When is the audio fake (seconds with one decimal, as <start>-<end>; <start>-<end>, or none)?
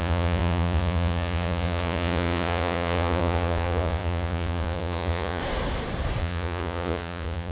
0.0-5.4; 6.2-7.5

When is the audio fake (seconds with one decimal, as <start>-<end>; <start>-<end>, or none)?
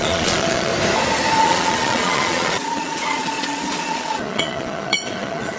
0.0-0.7; 1.4-5.6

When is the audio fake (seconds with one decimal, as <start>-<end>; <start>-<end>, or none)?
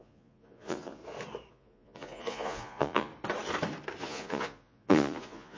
0.0-1.0; 1.5-3.1; 4.0-5.6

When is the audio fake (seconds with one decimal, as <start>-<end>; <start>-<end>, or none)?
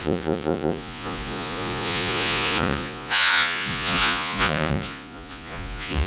0.0-6.1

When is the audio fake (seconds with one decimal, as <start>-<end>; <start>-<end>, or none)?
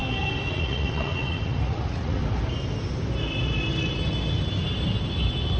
0.5-2.2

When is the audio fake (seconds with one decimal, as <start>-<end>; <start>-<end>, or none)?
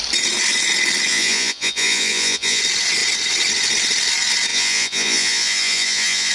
1.1-2.6; 4.5-6.3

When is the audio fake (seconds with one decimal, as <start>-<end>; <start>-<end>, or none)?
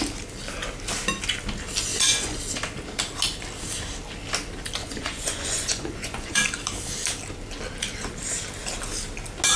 1.9-2.4; 4.8-6.4